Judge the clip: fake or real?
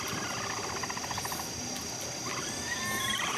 real